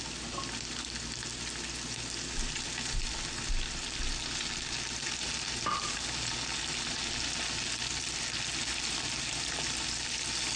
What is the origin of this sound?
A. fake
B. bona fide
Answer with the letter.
B